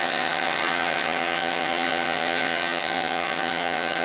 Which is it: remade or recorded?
remade